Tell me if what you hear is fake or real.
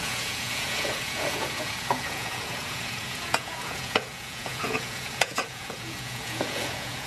fake